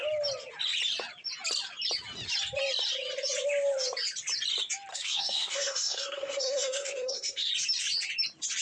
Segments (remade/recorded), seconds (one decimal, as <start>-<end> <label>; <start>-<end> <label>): 0.0-4.9 recorded; 4.9-7.5 remade; 7.5-8.6 recorded